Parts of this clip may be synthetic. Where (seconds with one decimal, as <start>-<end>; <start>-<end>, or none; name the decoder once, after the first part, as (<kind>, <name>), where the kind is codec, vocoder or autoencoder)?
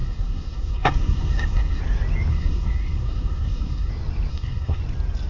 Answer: 0.0-1.8 (codec, SNAC); 2.3-3.9; 4.3-4.8